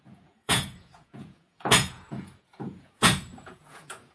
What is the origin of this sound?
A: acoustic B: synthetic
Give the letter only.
B